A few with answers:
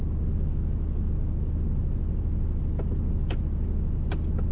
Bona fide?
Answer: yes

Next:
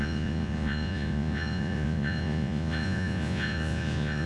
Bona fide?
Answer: no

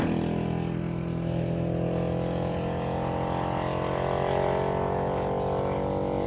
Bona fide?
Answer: yes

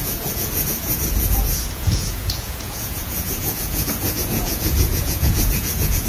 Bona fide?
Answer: no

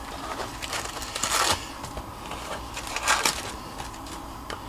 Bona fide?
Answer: yes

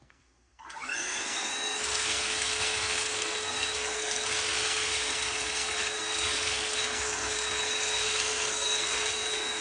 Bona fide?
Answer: no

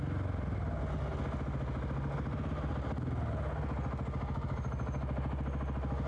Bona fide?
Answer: yes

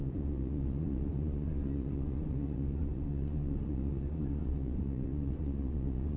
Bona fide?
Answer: no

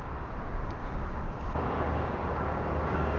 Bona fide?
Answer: no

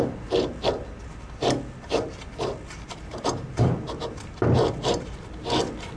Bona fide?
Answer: yes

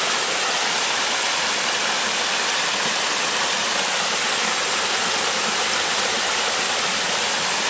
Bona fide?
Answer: yes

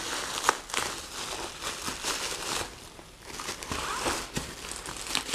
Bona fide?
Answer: yes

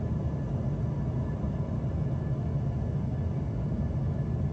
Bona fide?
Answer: yes